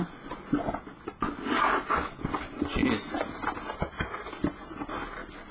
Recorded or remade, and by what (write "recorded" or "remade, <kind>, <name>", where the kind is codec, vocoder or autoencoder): recorded